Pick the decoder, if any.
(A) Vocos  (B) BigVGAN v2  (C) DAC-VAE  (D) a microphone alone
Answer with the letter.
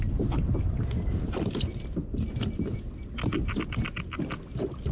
D